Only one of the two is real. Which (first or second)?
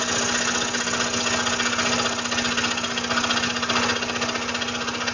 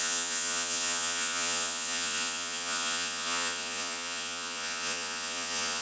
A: first